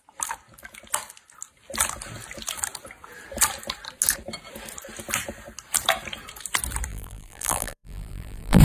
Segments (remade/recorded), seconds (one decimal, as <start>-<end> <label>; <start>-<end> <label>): 0.0-6.9 recorded; 6.9-8.6 remade